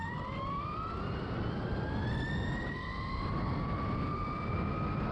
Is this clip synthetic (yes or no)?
no